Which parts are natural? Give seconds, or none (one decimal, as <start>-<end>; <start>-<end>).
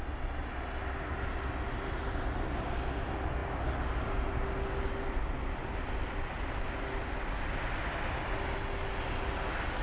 0.0-9.8